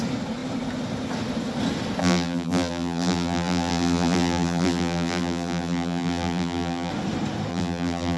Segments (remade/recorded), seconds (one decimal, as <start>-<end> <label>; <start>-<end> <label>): 0.0-2.0 recorded; 2.0-6.9 remade; 6.9-7.5 recorded; 7.5-8.2 remade